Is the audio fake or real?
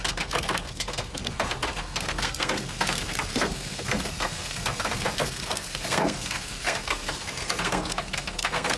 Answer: fake